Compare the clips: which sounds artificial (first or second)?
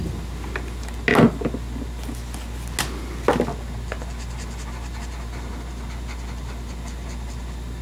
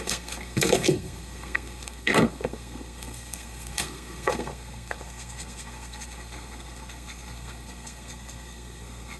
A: second